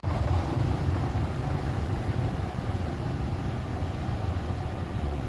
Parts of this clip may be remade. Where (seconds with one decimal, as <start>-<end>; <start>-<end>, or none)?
1.4-3.0; 3.7-5.3